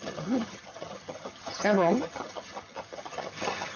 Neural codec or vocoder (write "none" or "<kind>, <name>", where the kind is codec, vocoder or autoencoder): vocoder, HiFi-GAN